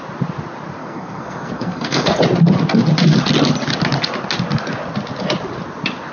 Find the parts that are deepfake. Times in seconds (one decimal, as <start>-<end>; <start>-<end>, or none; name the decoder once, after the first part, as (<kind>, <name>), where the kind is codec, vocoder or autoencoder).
0.8-2.2 (codec, SNAC)